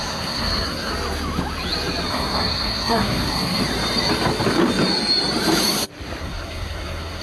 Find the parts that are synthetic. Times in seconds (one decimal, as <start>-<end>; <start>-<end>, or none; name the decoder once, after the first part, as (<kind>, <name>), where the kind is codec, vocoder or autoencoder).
0.0-0.9 (codec, SNAC); 2.1-3.6; 6.2-7.2